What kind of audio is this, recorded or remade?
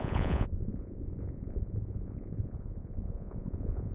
remade